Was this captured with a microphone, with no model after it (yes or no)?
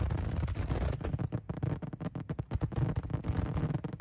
yes